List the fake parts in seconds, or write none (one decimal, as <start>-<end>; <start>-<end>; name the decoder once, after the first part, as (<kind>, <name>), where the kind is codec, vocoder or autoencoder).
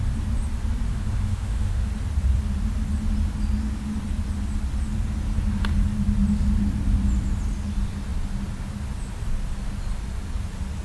0.9-1.9 (autoencoder, DAC-VAE)